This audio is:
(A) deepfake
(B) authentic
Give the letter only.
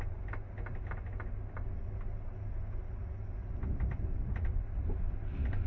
B